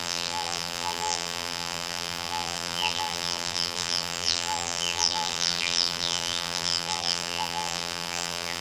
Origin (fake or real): fake